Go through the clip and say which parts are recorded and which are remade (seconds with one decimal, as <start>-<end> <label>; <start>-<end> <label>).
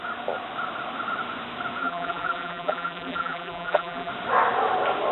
0.0-1.8 recorded; 1.8-4.1 remade; 4.1-5.1 recorded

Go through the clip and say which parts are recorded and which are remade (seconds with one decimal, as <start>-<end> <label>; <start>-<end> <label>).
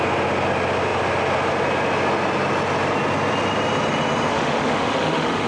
0.0-4.3 recorded; 4.3-5.5 remade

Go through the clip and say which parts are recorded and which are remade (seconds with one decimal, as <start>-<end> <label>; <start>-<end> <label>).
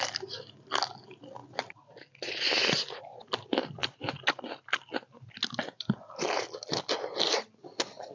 0.0-8.1 recorded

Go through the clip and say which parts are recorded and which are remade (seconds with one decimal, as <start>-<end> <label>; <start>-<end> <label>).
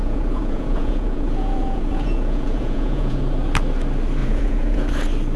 0.0-3.2 remade; 3.2-4.2 recorded; 4.2-4.9 remade; 4.9-5.4 recorded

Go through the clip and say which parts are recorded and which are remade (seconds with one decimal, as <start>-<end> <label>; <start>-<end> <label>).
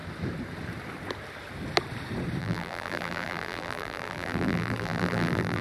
0.0-2.4 recorded; 2.4-5.6 remade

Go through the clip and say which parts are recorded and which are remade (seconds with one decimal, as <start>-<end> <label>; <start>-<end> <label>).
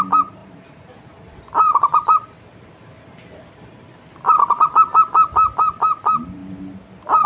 0.0-0.4 recorded; 0.4-4.4 remade; 4.4-7.3 recorded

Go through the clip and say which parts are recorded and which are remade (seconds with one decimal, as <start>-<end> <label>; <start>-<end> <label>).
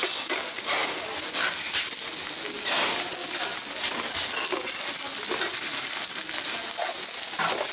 0.0-7.7 recorded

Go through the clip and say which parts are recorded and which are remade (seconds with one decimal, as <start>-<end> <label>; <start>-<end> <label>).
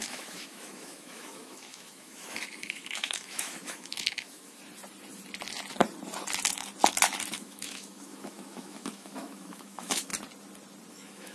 0.0-4.6 remade; 4.6-7.3 recorded; 7.3-10.1 remade; 10.1-10.9 recorded; 10.9-11.3 remade